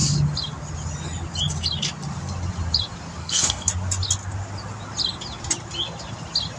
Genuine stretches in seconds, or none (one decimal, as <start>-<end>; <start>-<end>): 0.0-3.2; 3.7-6.6